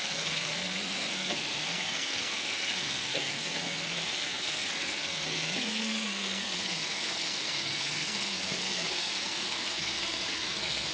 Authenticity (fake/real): fake